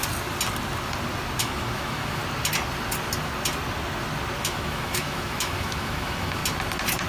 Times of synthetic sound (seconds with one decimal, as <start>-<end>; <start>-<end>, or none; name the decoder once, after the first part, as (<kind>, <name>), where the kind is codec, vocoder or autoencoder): 1.4-2.2 (autoencoder, DAC-VAE); 4.4-6.4